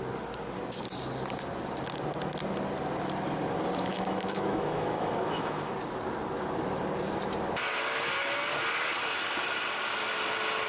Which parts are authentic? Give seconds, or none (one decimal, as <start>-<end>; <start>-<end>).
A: 0.0-3.9; 5.7-10.7